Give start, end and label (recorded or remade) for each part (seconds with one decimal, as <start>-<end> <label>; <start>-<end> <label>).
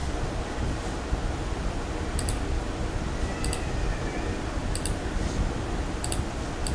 0.0-0.6 remade; 0.6-1.2 recorded; 1.2-2.4 remade; 2.4-4.6 recorded; 4.6-6.0 remade; 6.0-6.7 recorded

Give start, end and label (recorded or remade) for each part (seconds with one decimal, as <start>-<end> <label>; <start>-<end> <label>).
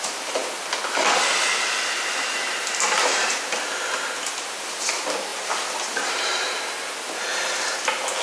0.0-8.2 recorded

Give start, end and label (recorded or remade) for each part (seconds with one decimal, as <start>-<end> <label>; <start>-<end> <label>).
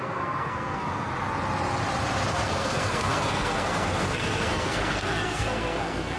0.0-1.1 remade; 1.1-2.3 recorded; 2.3-6.2 remade